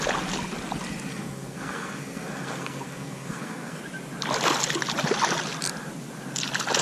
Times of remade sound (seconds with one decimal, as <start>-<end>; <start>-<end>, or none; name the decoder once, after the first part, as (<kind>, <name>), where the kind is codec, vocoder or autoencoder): 1.1-3.8 (codec, SNAC)